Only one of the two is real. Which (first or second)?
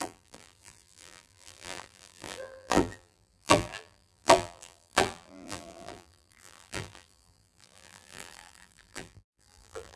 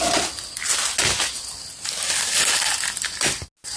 second